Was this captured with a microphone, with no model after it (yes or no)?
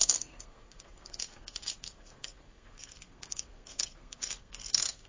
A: no